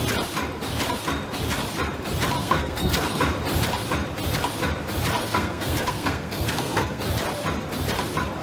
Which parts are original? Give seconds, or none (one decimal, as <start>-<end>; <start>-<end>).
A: 0.0-2.4; 3.2-5.2; 7.0-8.4